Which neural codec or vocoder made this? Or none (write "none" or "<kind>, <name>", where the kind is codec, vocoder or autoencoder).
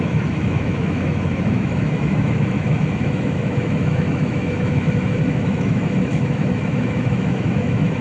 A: autoencoder, DAC-VAE